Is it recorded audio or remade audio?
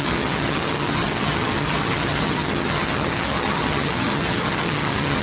remade